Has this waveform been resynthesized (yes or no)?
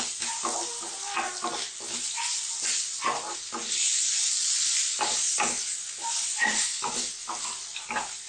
no